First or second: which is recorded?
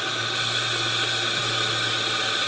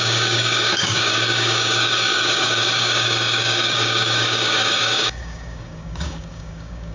first